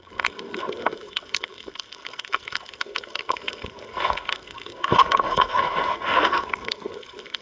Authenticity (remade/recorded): remade